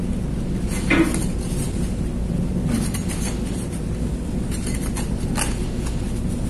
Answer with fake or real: real